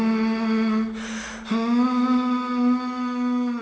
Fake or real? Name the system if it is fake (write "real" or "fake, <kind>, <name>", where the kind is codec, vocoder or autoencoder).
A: real